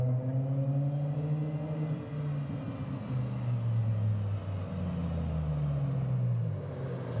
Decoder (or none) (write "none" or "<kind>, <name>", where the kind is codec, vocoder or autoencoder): none